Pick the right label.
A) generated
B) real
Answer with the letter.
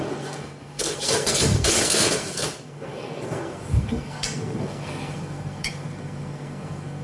A